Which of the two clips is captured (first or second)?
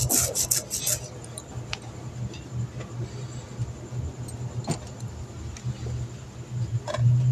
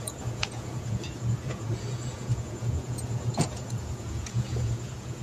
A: first